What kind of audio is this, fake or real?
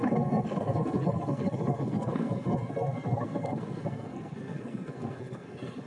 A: fake